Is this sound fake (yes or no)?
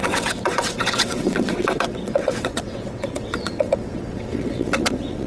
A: yes